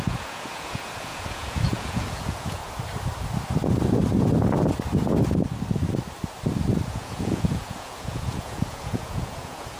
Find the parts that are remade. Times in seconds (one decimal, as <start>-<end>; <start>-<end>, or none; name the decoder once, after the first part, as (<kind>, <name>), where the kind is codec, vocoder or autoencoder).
0.0-2.6 (vocoder, Vocos); 6.9-9.8